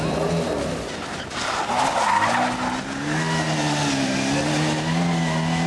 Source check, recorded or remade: recorded